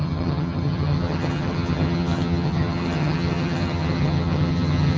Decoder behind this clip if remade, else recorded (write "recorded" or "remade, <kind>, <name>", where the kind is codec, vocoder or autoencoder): remade, vocoder, HiFi-GAN